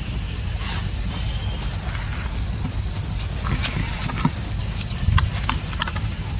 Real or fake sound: real